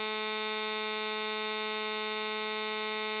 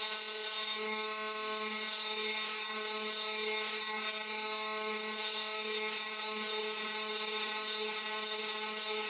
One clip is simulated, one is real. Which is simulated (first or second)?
second